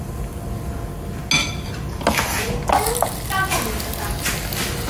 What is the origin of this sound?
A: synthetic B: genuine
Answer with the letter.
B